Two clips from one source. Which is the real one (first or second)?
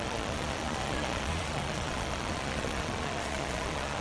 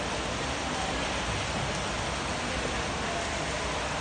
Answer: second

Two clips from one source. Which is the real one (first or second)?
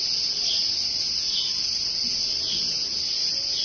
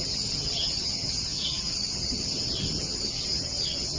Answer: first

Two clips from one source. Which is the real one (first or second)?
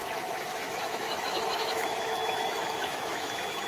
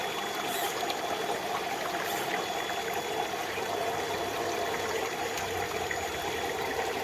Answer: second